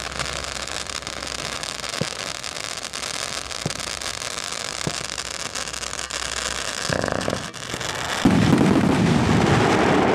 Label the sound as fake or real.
real